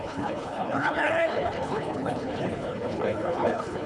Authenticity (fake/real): fake